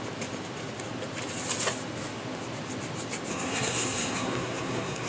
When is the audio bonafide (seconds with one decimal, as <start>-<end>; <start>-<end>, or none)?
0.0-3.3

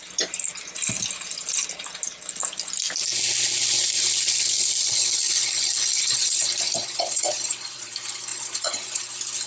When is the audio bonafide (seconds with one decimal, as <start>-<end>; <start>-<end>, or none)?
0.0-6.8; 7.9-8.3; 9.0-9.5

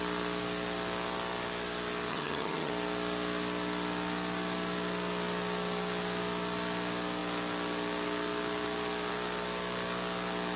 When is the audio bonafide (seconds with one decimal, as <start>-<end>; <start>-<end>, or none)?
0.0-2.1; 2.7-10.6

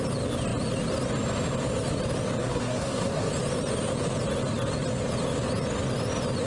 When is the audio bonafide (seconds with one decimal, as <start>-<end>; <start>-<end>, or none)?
0.0-2.4; 3.3-6.5